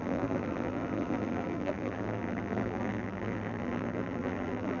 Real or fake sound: fake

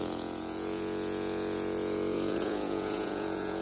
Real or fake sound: fake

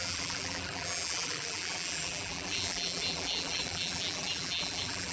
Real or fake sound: fake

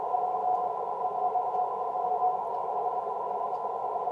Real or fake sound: real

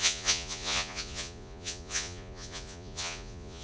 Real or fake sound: fake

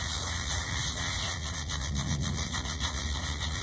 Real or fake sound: fake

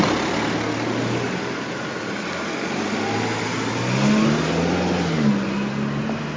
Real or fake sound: real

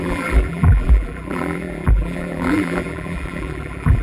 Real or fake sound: fake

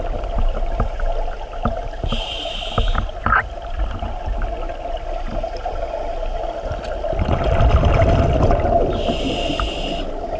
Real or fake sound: real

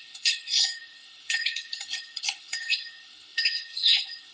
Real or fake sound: fake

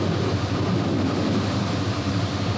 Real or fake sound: real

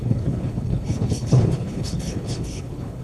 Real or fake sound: fake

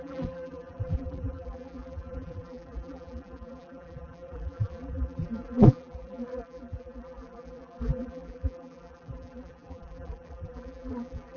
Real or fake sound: fake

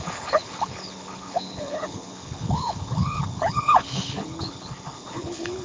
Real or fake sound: fake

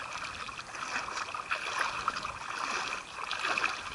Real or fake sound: real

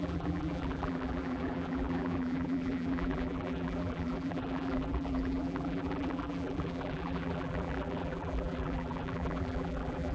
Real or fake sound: fake